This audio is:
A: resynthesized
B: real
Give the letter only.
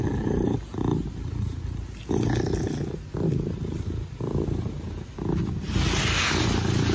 B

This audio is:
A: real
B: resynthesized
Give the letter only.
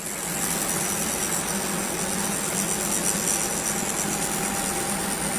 A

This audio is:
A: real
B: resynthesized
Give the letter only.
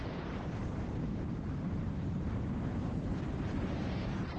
B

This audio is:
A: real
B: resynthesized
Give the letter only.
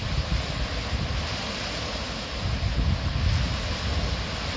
A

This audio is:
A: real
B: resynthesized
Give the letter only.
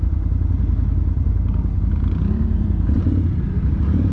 B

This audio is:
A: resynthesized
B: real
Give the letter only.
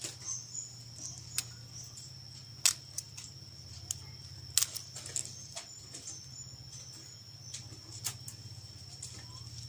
B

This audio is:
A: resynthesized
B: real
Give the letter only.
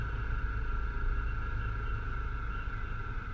B